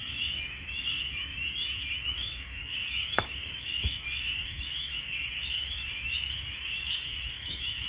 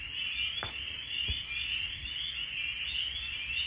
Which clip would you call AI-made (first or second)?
first